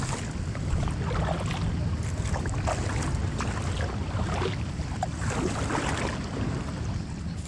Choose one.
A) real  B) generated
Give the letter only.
A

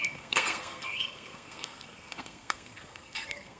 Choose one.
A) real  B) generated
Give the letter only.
B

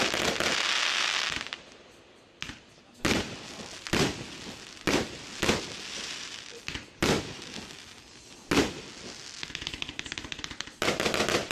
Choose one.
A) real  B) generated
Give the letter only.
A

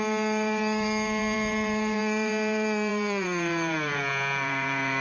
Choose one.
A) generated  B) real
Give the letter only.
A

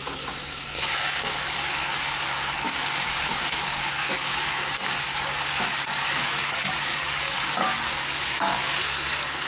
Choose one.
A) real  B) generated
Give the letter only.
B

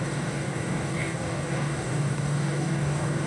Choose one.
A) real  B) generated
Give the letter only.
B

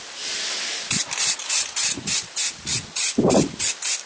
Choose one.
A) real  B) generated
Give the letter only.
A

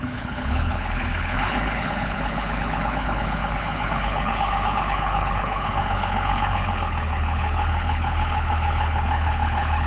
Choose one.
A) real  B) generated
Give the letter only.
B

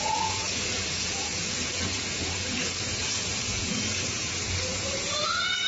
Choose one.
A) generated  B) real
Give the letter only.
A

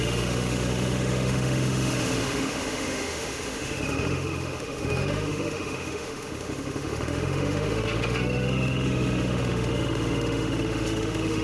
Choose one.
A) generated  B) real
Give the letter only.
A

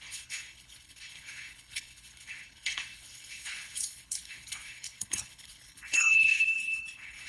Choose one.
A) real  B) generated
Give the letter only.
B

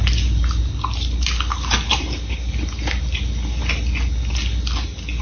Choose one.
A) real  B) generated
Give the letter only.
A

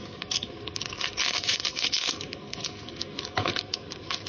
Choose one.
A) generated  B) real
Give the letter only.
A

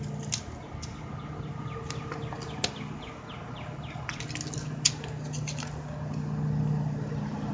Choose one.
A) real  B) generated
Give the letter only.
A